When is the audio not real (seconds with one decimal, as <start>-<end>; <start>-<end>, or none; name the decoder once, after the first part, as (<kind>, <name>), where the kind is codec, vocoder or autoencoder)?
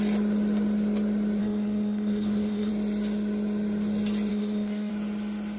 1.4-2.7 (codec, SNAC); 4.3-4.9